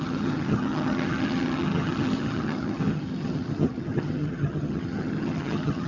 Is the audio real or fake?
fake